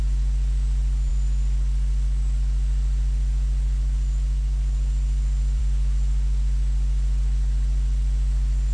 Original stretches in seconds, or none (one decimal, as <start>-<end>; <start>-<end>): 0.0-8.7